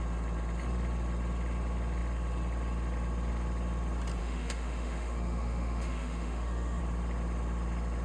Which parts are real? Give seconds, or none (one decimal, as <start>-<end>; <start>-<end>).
0.0-4.2; 6.8-8.0